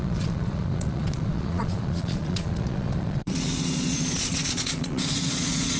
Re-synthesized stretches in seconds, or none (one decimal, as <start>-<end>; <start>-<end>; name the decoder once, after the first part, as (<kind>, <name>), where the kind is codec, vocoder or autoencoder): 0.0-5.8 (vocoder, Vocos)